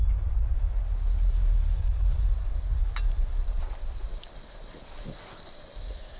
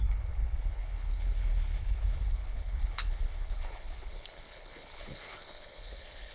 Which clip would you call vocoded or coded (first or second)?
second